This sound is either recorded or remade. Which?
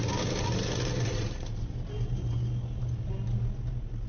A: recorded